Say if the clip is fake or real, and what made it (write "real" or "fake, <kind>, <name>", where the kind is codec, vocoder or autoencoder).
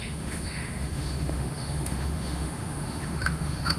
fake, autoencoder, DAC-VAE